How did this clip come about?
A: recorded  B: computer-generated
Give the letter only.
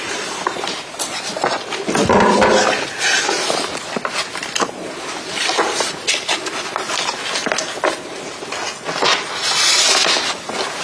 A